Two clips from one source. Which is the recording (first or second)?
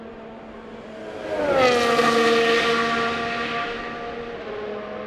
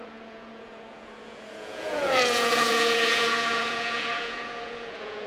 first